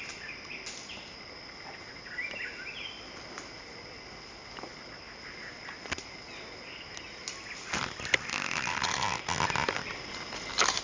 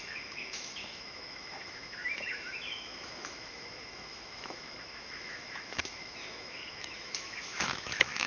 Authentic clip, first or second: first